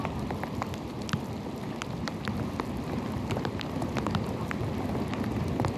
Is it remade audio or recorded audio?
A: recorded